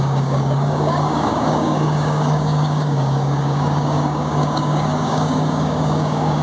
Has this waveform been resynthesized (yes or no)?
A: yes